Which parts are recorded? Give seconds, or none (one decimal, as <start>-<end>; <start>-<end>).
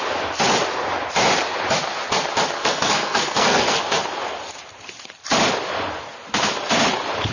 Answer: 0.0-2.6; 3.8-7.3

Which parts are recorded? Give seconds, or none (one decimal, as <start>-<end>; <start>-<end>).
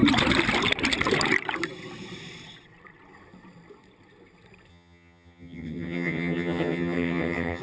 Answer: 0.0-4.7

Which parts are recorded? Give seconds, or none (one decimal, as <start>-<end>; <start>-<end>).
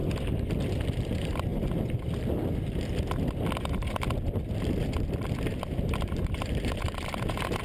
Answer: 0.0-5.5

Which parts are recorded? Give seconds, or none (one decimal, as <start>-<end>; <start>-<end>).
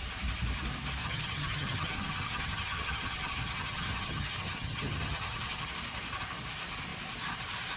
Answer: 0.0-1.0; 5.7-7.8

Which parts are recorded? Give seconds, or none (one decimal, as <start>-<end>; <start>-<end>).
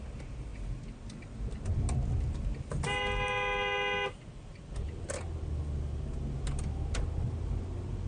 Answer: 0.0-8.1